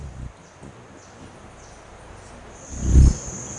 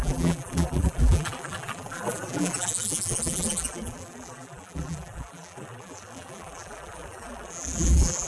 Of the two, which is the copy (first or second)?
second